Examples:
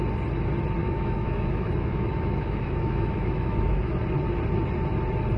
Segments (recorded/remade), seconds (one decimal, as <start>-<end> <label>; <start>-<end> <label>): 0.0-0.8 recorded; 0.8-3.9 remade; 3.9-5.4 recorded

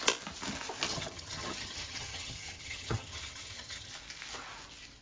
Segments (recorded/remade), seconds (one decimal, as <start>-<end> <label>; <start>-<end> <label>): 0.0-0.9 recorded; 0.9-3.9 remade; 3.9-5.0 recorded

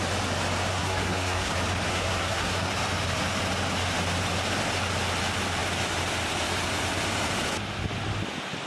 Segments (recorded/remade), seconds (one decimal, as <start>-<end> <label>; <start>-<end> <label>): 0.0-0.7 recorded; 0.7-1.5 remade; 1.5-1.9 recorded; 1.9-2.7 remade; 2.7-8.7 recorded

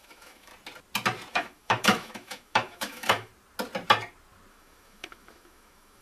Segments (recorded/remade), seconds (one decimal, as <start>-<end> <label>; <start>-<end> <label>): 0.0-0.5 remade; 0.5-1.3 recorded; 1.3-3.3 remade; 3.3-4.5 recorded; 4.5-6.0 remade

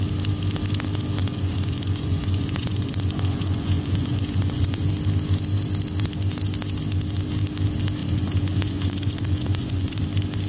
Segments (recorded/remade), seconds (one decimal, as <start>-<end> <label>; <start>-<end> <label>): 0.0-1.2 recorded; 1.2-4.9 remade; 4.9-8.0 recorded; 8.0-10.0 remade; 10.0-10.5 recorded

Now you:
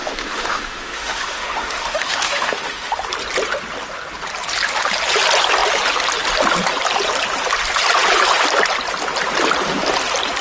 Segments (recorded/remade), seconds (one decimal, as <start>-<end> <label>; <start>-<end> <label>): 0.0-2.9 remade; 2.9-10.4 recorded